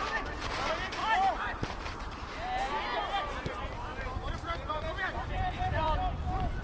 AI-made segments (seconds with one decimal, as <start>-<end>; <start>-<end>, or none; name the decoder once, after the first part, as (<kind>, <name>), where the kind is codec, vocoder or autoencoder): 0.0-1.0 (vocoder, BigVGAN v2); 3.2-6.6